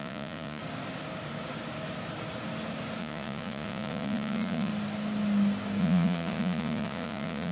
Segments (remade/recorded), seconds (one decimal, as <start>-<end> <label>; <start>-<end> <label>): 0.0-0.6 remade; 0.6-3.0 recorded; 3.0-4.7 remade; 4.7-5.8 recorded; 5.8-7.5 remade